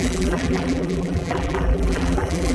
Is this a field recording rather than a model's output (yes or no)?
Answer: no